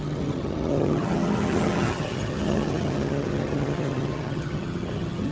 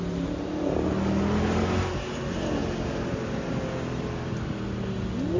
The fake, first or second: first